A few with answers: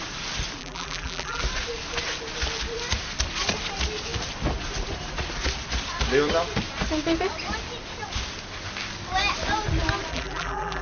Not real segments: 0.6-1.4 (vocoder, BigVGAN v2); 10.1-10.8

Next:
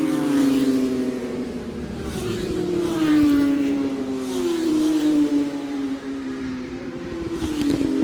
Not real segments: 1.2-4.0 (vocoder, BigVGAN v2); 4.6-7.4

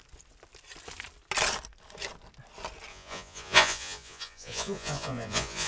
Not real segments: 2.9-5.7 (vocoder, Vocos)